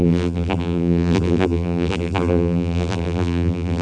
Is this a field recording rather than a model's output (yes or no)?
no